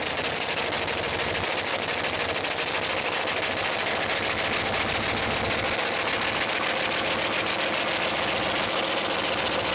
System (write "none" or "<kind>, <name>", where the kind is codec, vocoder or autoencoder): none